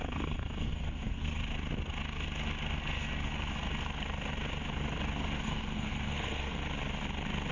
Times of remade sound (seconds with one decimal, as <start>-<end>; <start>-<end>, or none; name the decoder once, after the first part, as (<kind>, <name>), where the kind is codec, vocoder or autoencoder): 0.0-1.4 (codec, SNAC); 5.4-6.6